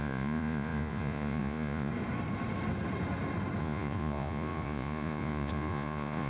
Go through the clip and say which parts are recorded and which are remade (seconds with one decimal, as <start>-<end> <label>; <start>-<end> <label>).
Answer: 0.0-1.9 remade; 1.9-3.6 recorded; 3.6-6.3 remade